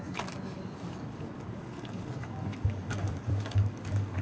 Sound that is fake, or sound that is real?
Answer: fake